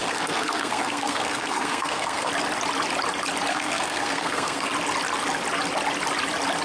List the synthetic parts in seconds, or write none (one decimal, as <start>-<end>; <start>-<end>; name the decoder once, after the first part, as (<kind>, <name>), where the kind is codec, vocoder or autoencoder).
0.0-2.3 (codec, SNAC); 3.5-4.7